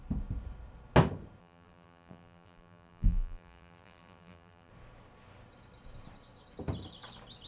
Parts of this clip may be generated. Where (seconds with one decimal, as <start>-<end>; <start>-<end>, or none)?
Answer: 1.4-4.7